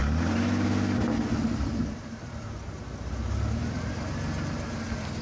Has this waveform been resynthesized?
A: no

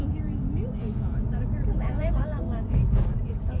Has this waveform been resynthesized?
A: yes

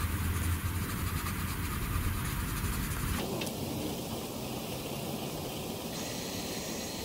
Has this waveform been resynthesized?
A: no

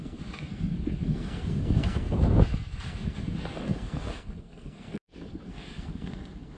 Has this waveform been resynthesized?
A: yes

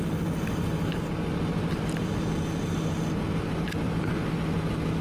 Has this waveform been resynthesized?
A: no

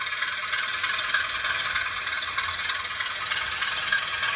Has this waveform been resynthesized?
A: no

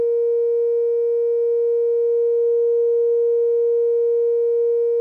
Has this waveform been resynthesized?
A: no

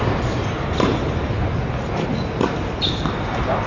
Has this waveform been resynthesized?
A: no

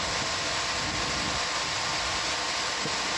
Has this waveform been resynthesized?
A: no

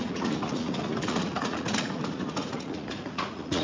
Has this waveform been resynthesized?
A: yes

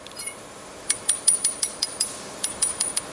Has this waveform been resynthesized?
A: yes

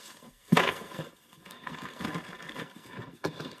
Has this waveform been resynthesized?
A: yes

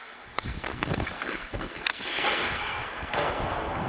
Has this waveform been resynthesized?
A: yes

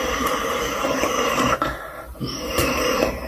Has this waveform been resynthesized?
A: yes